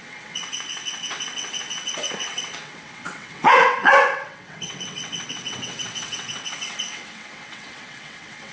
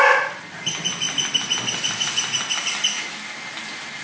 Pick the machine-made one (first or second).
first